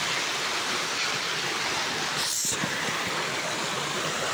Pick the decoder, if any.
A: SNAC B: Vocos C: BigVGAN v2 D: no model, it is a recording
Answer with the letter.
D